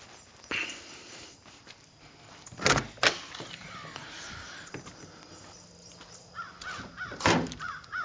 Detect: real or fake real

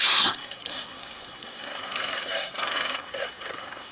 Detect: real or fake fake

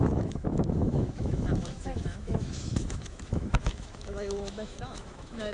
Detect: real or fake fake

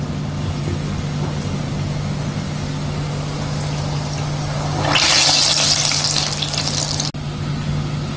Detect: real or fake real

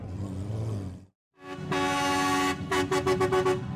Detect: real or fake real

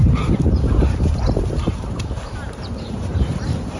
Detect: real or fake fake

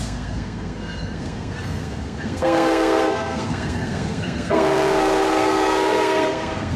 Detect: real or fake fake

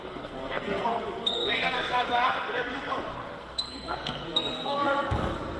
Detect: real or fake fake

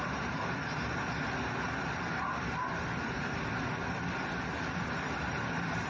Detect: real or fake fake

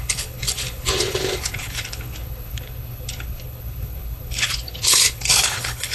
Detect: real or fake fake